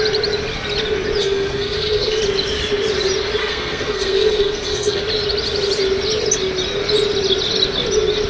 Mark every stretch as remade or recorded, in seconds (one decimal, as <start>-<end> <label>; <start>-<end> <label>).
0.0-1.2 recorded; 1.2-2.2 remade; 2.2-3.4 recorded; 3.4-5.0 remade; 5.0-8.3 recorded